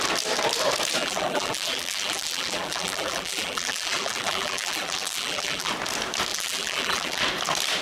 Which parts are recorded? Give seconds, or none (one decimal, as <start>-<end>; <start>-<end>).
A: 0.0-1.0; 5.7-6.3; 7.2-7.8